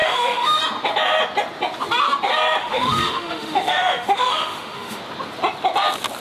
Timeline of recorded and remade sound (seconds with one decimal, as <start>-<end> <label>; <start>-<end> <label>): 0.0-0.6 remade; 0.6-2.6 recorded; 2.6-5.0 remade; 5.0-6.2 recorded